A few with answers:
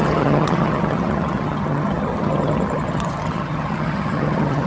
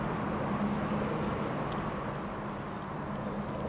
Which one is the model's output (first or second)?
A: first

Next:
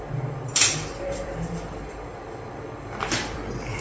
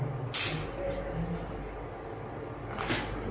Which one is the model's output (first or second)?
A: first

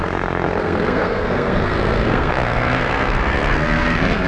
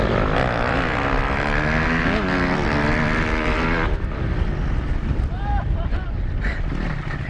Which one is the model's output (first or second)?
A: first